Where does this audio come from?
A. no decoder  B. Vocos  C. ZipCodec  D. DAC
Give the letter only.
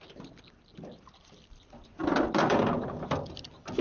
A